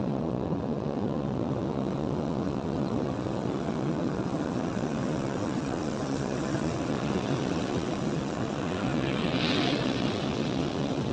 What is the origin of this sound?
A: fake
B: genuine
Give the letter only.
A